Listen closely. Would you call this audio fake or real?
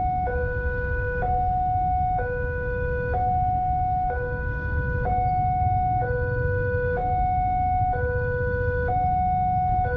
fake